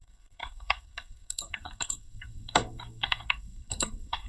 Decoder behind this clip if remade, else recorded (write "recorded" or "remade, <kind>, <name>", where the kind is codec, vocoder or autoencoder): remade, codec, SNAC